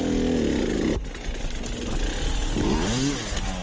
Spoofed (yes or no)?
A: no